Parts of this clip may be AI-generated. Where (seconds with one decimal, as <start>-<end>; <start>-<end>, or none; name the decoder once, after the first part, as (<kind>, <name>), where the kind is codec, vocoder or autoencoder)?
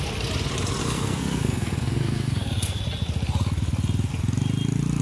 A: 0.8-2.8 (codec, SNAC)